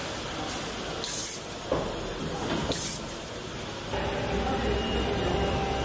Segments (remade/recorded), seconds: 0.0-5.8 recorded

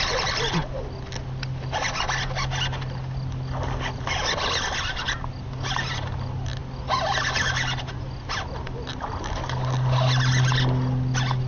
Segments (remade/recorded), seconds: 0.0-11.5 recorded

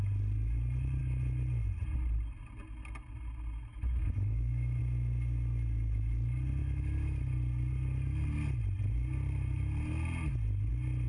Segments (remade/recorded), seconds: 0.0-3.7 recorded; 3.7-4.8 remade; 4.8-6.6 recorded; 6.6-7.2 remade; 7.2-11.1 recorded

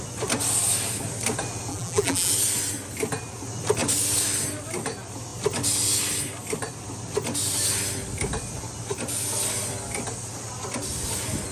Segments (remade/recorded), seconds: 0.0-1.7 recorded; 1.7-2.3 remade; 2.3-11.5 recorded